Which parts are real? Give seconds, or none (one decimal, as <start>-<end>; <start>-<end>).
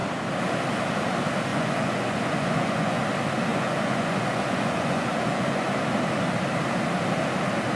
0.0-1.5; 3.0-3.5; 5.7-7.8